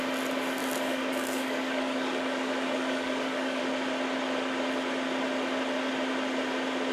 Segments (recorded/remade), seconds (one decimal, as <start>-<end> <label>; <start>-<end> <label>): 0.0-0.6 recorded; 0.6-3.6 remade; 3.6-6.9 recorded